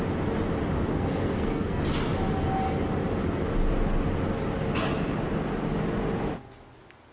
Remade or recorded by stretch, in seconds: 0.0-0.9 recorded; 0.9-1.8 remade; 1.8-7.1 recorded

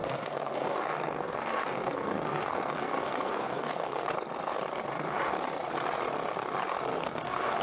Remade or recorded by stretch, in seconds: 0.0-4.1 remade; 4.1-6.9 recorded; 6.9-7.6 remade

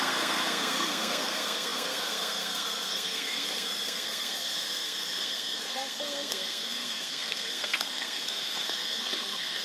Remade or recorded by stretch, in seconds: 0.0-9.6 remade

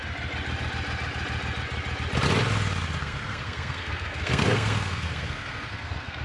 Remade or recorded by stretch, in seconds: 0.0-3.0 recorded; 3.0-6.2 remade